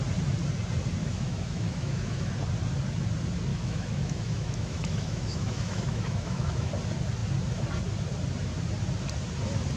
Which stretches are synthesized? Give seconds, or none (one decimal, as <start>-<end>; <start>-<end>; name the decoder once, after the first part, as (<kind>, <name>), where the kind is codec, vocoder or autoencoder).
1.0-2.3 (autoencoder, DAC-VAE); 3.5-6.7